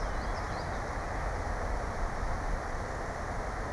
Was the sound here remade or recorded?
recorded